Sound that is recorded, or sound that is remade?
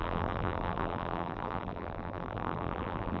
remade